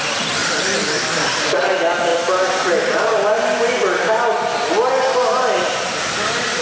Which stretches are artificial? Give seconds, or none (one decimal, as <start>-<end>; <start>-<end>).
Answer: 0.4-1.6